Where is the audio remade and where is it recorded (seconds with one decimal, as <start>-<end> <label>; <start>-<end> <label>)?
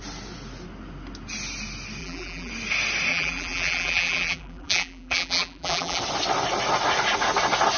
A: 0.0-2.0 recorded; 2.0-2.5 remade; 2.5-3.1 recorded; 3.1-6.0 remade; 6.0-7.8 recorded